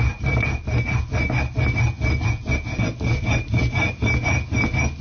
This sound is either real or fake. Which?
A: real